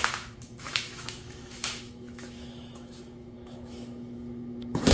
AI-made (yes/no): yes